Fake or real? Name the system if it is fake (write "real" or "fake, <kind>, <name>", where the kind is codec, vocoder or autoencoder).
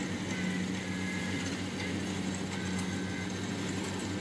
real